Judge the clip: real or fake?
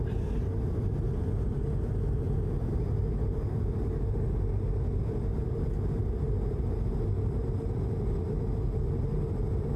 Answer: real